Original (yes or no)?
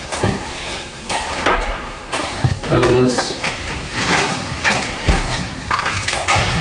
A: no